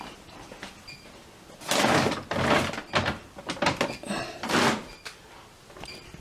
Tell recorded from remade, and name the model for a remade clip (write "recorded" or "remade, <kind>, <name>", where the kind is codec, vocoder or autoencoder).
recorded